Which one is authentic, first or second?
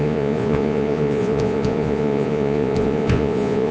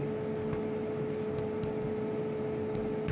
second